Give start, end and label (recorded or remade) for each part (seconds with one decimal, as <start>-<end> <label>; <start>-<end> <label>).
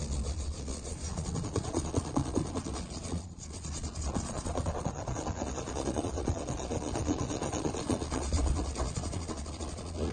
0.0-10.1 remade